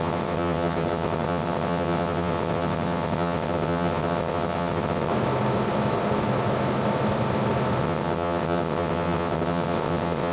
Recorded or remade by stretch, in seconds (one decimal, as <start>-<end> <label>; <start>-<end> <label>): 0.0-5.1 remade; 5.1-7.8 recorded; 7.8-10.3 remade